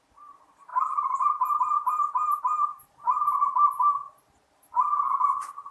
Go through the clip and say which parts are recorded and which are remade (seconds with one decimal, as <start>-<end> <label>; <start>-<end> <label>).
0.0-0.7 recorded; 0.7-1.6 remade; 1.6-2.7 recorded; 2.7-3.4 remade; 3.4-5.7 recorded